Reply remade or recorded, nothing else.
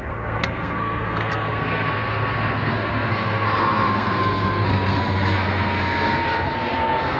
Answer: remade